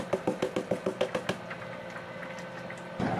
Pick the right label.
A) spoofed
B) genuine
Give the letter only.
B